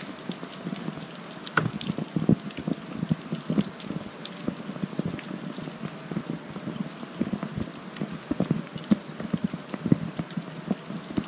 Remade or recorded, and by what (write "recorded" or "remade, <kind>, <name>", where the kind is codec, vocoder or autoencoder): recorded